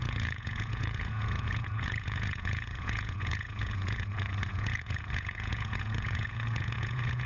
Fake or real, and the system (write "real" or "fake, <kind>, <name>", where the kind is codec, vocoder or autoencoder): fake, vocoder, Vocos